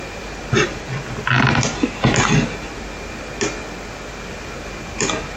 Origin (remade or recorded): recorded